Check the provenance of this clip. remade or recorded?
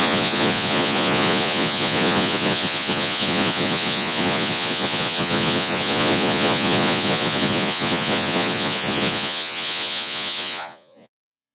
remade